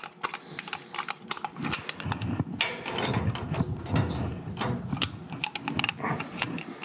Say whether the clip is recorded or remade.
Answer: recorded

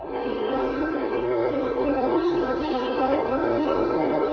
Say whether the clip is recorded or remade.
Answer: remade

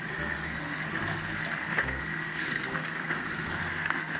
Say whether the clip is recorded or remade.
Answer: remade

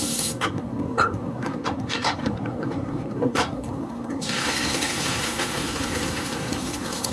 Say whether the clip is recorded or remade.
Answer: remade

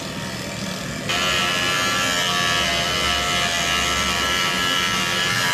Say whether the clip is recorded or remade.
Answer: recorded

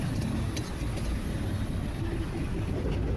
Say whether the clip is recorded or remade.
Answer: recorded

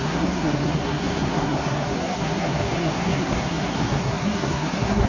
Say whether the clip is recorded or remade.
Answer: remade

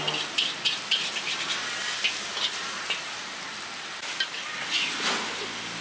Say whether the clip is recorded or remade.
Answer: recorded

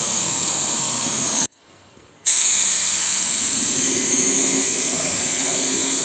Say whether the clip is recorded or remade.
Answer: remade